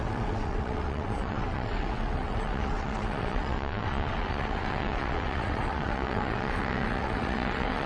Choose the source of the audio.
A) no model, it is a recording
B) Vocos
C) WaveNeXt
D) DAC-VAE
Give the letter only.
C